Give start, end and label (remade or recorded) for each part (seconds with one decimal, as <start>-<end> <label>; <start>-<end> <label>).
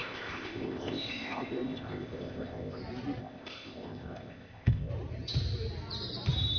0.0-2.8 remade; 2.8-3.2 recorded; 3.2-4.9 remade; 4.9-6.6 recorded